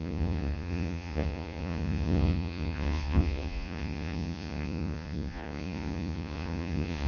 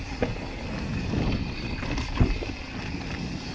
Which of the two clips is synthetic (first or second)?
first